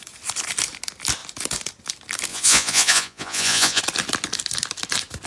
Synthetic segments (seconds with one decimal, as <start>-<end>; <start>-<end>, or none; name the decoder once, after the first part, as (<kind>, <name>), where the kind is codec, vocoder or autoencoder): 2.3-3.8 (vocoder, Vocos)